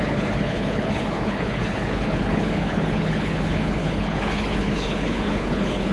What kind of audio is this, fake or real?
fake